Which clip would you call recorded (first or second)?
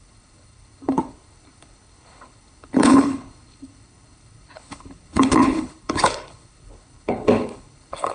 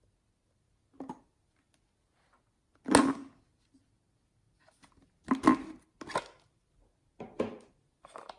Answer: second